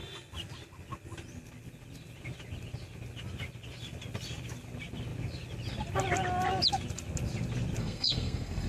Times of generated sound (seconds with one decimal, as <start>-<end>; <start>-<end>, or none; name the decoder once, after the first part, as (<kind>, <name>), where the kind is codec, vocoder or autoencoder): 7.8-8.7 (codec, SNAC)